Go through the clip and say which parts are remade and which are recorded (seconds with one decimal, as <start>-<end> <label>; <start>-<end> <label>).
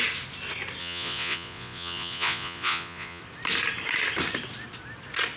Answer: 0.0-0.8 recorded; 0.8-3.2 remade; 3.2-5.4 recorded